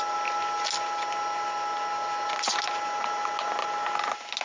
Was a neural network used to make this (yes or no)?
no